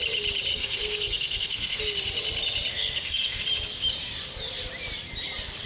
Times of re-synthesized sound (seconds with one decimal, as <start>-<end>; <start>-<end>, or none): 0.5-1.8; 2.7-3.4